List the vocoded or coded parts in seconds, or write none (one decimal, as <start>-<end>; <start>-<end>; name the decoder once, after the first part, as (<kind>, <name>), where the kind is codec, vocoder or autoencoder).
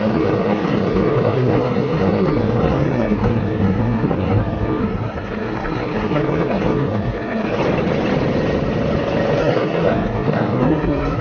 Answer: 0.0-7.6 (codec, SNAC); 9.4-11.2